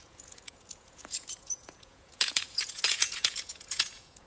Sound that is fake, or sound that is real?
fake